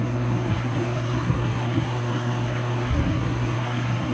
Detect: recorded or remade remade